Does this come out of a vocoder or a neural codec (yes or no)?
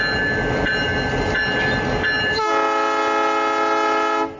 no